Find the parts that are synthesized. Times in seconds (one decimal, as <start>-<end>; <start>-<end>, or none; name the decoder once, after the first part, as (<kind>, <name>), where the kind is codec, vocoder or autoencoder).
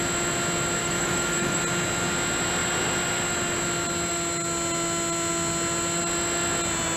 0.8-1.6 (autoencoder, DAC-VAE)